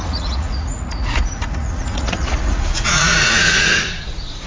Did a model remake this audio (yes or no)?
yes